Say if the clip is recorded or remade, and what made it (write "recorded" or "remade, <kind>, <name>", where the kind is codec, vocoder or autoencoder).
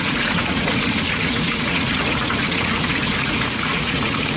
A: remade, vocoder, Vocos